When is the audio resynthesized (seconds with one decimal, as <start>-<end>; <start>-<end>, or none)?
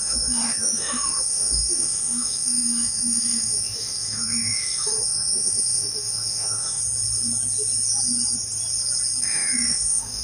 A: 0.0-6.8; 9.2-10.2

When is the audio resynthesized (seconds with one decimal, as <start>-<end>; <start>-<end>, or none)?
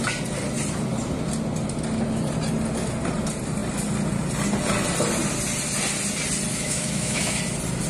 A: 6.5-7.4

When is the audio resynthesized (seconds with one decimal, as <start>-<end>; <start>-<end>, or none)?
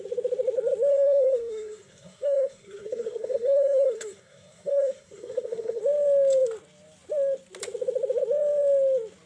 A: 0.9-5.8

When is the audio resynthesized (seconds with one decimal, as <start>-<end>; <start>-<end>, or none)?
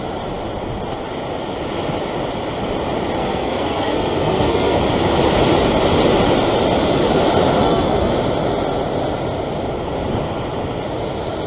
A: 3.2-4.8; 7.6-8.1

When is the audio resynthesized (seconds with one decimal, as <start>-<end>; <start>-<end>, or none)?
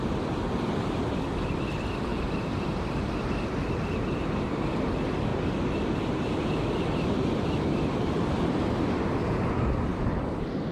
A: 2.1-3.1